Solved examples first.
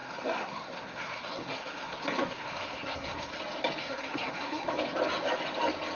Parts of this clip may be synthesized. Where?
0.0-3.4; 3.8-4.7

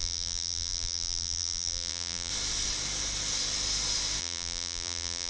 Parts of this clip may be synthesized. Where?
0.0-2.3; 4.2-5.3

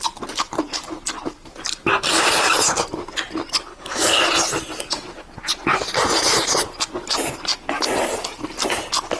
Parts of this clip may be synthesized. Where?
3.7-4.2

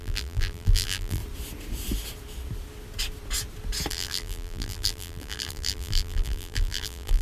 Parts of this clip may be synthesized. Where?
0.0-1.2; 3.9-7.2

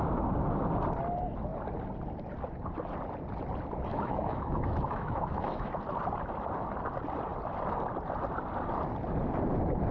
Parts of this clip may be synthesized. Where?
3.9-5.7